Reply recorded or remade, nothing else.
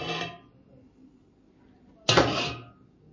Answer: recorded